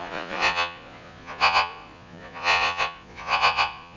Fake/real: fake